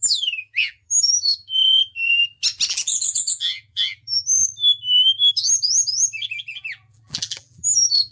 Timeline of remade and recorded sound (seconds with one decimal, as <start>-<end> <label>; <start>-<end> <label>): 0.0-2.2 remade; 2.2-2.7 recorded; 2.7-4.5 remade; 4.5-5.3 recorded; 5.3-8.1 remade